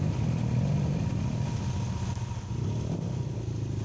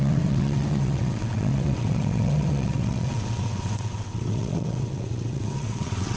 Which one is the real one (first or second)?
first